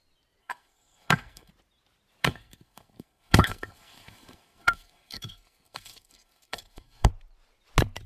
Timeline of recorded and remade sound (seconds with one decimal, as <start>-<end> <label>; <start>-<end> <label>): 0.0-0.4 recorded; 0.4-1.5 remade; 1.5-2.2 recorded; 2.2-7.1 remade; 7.1-8.1 recorded